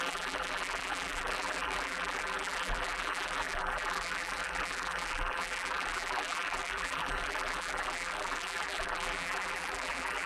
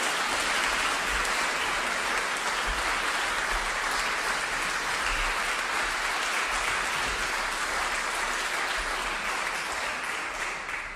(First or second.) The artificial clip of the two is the first